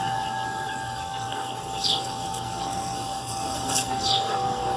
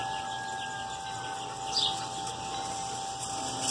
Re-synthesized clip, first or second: first